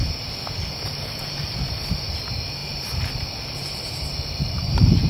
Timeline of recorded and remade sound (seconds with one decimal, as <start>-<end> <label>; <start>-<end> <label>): 0.0-2.6 recorded; 2.6-5.1 remade